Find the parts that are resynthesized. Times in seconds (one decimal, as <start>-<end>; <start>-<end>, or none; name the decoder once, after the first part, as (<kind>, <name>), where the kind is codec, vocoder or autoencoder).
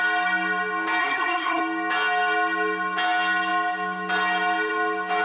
1.0-1.6 (codec, SNAC)